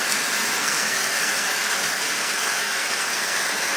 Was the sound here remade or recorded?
remade